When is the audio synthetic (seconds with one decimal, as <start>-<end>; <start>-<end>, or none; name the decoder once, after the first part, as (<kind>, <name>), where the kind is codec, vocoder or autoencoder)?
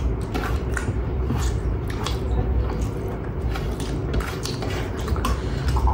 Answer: 0.8-2.1 (vocoder, BigVGAN v2); 4.0-5.1